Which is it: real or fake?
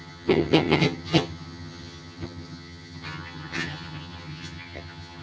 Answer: fake